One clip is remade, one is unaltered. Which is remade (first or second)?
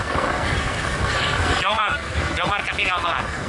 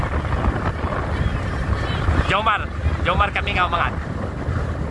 first